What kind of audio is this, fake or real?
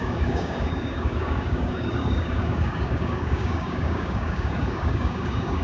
fake